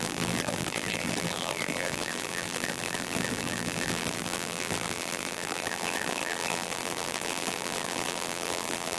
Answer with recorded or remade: remade